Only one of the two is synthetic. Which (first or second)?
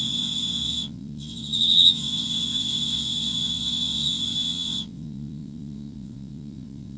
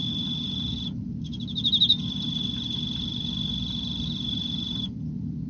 first